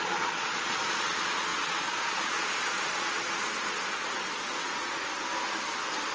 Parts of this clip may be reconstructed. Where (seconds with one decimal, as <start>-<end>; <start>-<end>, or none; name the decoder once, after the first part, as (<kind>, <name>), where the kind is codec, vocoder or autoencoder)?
0.0-5.1 (vocoder, Vocos)